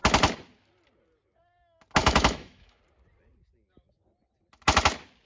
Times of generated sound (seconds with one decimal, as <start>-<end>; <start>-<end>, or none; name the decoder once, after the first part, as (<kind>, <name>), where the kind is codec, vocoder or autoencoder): 2.0-2.8 (autoencoder, DAC-VAE)